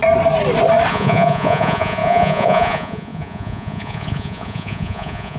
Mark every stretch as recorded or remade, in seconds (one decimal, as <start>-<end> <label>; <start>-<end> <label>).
0.0-0.9 recorded; 0.9-5.4 remade